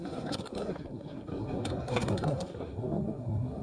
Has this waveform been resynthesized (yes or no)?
yes